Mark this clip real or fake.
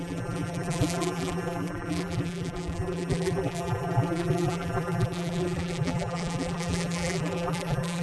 fake